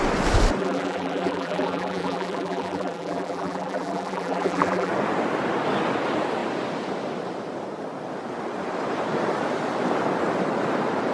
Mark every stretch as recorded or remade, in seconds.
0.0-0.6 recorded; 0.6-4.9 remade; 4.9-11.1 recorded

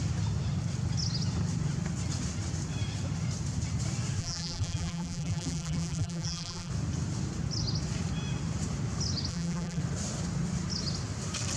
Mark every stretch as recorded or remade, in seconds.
0.0-4.2 recorded; 4.2-6.7 remade; 6.7-9.3 recorded; 9.3-9.8 remade; 9.8-11.6 recorded

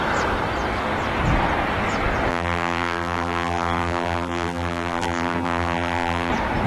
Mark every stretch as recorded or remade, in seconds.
0.0-2.3 recorded; 2.3-6.3 remade; 6.3-6.7 recorded

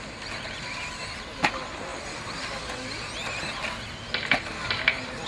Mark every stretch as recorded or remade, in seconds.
0.0-5.3 recorded